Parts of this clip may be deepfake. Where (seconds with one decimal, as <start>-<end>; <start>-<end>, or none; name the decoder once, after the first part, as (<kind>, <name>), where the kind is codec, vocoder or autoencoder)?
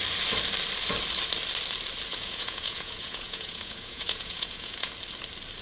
2.1-4.9 (vocoder, Vocos)